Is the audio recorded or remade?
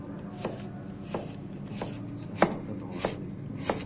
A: recorded